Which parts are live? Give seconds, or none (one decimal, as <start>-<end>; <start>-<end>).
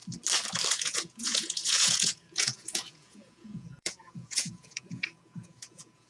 0.0-0.7